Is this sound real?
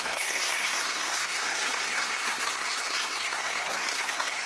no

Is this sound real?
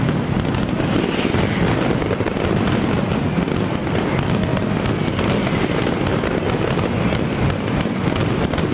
yes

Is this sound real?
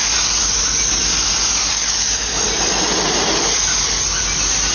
yes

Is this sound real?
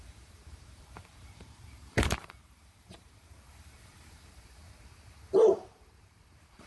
no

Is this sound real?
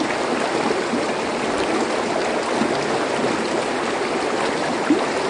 yes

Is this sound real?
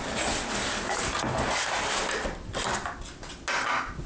yes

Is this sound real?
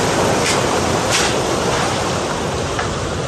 no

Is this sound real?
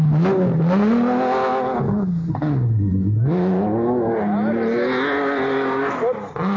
yes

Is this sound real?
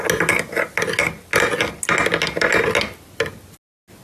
yes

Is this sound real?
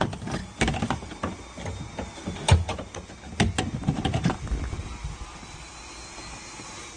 yes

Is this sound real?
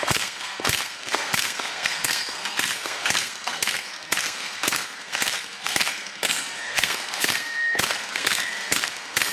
no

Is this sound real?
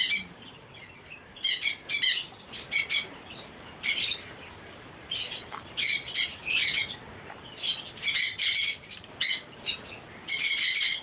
yes